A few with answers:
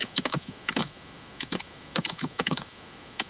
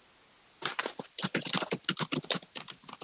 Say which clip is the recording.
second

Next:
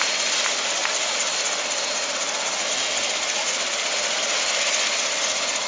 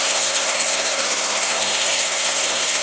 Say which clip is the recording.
first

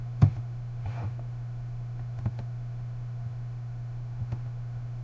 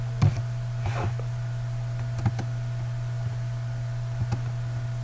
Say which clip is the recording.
second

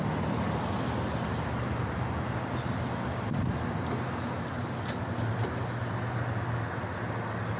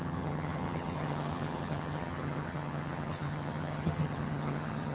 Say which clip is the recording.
first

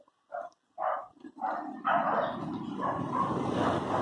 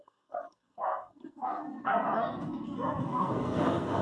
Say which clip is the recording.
first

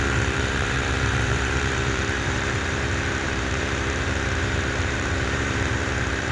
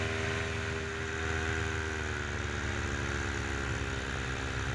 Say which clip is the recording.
second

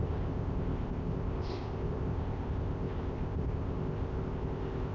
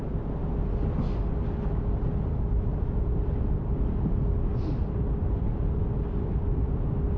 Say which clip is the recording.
second